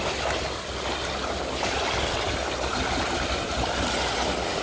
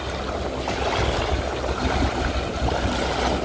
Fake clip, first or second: first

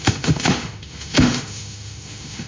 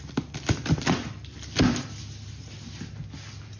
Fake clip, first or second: first